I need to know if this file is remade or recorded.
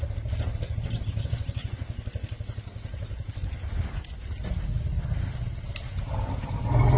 recorded